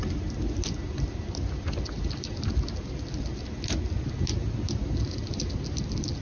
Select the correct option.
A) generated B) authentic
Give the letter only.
B